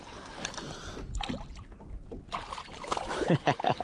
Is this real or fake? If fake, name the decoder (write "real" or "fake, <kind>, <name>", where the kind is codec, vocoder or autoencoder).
real